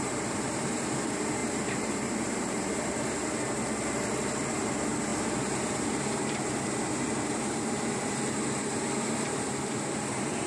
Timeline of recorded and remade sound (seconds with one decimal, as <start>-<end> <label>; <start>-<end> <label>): 0.0-3.6 remade; 3.6-4.5 recorded; 4.5-10.5 remade